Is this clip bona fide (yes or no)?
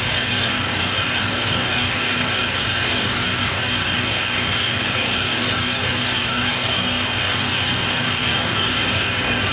no